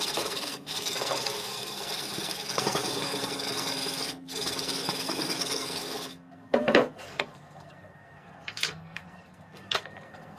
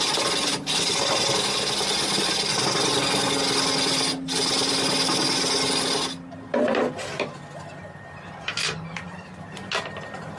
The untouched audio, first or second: second